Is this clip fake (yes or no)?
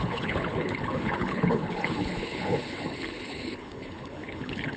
yes